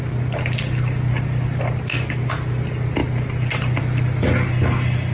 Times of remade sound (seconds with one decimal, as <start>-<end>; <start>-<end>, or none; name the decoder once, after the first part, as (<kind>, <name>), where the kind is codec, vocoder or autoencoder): none